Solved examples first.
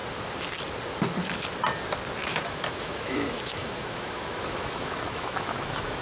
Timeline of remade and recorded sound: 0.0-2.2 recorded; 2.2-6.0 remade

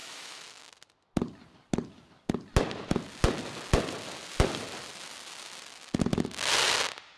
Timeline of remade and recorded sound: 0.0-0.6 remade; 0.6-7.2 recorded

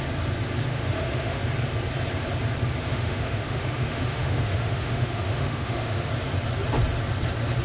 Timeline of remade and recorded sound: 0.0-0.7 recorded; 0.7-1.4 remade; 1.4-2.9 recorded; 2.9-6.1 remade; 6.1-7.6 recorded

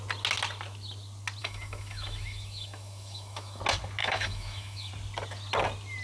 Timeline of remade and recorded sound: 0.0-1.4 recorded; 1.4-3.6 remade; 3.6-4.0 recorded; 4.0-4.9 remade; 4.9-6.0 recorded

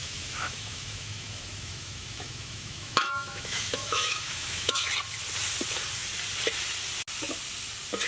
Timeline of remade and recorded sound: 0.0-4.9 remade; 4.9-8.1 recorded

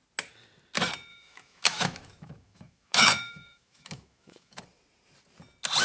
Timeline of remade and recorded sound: 0.0-1.1 recorded; 1.1-4.6 remade; 4.6-5.8 recorded